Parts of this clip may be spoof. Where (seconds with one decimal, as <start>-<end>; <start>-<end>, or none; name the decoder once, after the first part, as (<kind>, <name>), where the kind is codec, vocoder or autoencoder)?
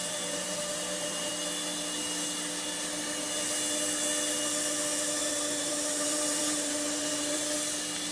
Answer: 0.0-1.3 (vocoder, BigVGAN v2); 5.2-7.4